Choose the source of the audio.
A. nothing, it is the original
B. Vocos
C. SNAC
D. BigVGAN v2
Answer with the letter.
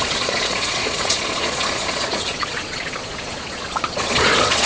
B